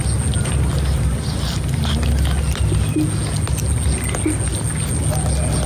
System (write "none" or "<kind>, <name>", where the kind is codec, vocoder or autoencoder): none